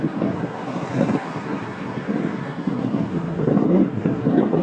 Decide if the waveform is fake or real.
fake